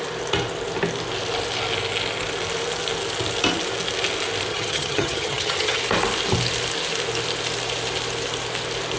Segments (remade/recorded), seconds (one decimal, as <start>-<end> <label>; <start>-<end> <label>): 0.0-4.5 recorded; 4.5-5.8 remade; 5.8-9.0 recorded